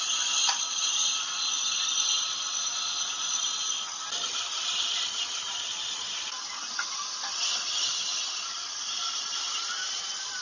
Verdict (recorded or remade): recorded